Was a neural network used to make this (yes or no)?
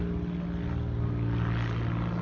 no